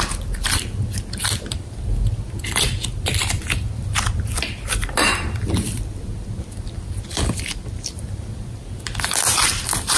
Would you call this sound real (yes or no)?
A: no